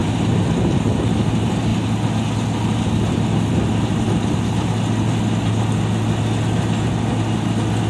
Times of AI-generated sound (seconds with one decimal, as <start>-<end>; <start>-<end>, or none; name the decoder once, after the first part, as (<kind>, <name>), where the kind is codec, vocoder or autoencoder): 0.0-0.5 (vocoder, BigVGAN v2)